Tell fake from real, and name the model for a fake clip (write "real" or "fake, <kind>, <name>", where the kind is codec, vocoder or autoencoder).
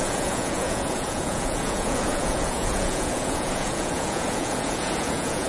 fake, vocoder, Vocos